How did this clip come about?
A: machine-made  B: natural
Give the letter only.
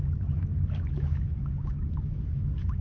A